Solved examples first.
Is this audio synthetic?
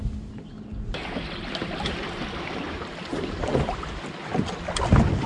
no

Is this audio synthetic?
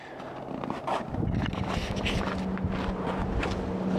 no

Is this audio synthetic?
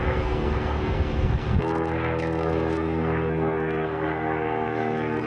yes